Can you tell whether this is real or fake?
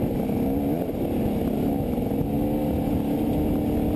real